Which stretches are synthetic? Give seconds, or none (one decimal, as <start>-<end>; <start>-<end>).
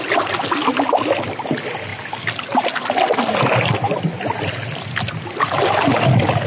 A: none